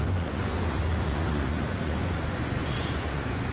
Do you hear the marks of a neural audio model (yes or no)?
yes